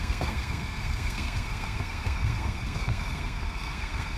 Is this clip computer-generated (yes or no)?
yes